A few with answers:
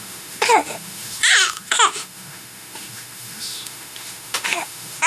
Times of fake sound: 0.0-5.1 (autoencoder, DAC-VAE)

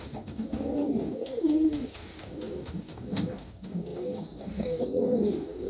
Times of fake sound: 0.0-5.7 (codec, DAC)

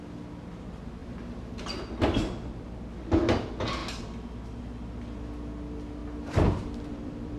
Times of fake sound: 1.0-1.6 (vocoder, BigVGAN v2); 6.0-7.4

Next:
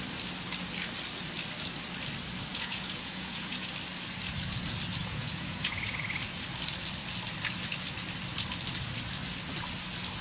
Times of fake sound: 2.5-3.7 (vocoder, Vocos); 5.0-6.0

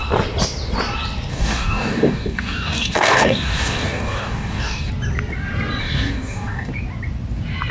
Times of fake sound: 1.3-4.9 (codec, DAC); 5.8-6.7